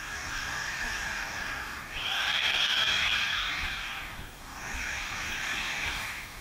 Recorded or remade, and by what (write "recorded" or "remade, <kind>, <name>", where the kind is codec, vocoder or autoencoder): remade, codec, DAC